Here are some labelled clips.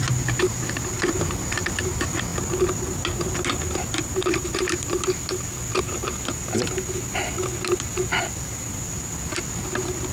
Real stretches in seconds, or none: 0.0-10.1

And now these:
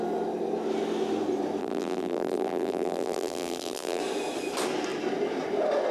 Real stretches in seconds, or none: 0.0-1.6; 4.0-5.9